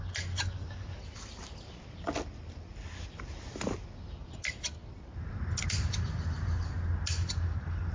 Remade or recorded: recorded